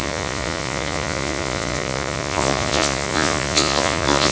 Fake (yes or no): yes